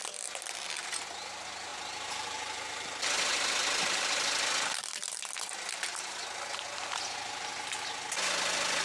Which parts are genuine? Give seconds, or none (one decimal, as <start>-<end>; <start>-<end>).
0.0-8.8